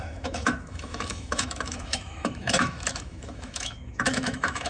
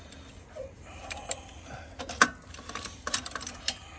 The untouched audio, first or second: second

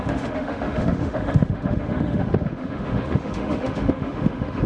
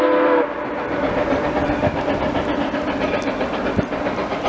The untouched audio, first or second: second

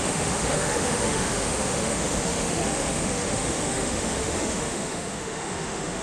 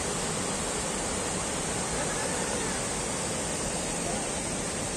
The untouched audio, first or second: second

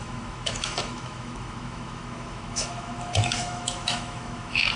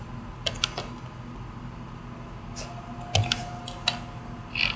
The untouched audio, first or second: second